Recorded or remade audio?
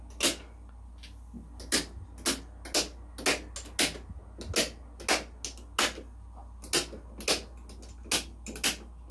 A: recorded